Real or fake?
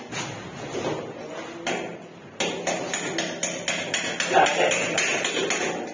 real